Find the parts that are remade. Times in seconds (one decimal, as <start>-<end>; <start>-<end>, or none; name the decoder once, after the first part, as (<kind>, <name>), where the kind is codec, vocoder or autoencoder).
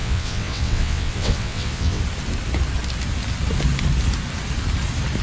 0.0-2.0 (vocoder, WaveNeXt)